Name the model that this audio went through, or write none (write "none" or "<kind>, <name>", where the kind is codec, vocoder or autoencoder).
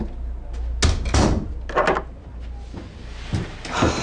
none